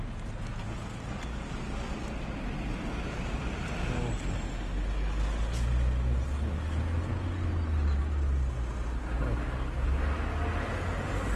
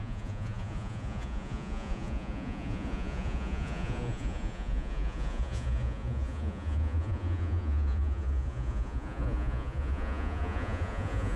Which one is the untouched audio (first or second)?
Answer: first